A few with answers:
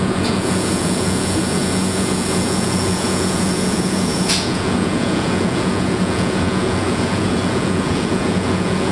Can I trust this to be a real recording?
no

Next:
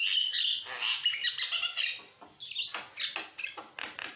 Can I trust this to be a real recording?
yes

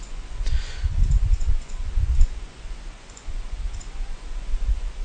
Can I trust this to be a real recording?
no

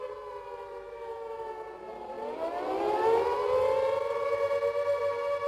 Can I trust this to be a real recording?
no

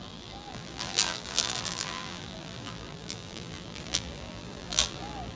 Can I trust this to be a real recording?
no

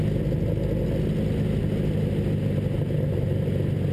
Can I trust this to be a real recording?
yes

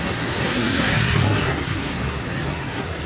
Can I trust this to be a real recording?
no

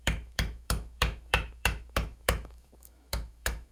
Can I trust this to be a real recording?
no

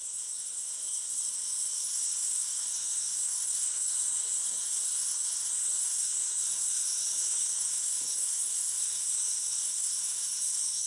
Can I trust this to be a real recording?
no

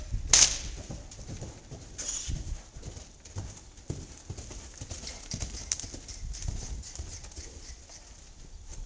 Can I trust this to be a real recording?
yes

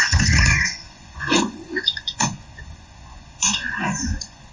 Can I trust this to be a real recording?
no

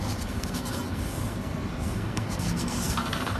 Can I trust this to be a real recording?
no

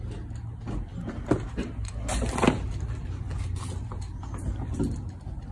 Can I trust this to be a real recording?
yes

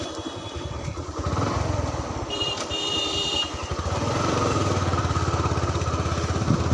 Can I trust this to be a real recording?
no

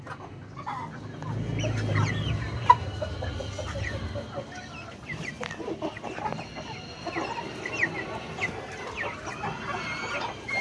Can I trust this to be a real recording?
yes